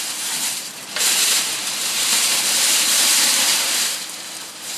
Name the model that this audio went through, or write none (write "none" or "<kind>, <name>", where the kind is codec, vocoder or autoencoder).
vocoder, BigVGAN v2